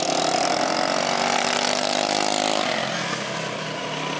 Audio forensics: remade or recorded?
recorded